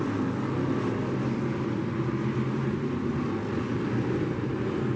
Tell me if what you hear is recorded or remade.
recorded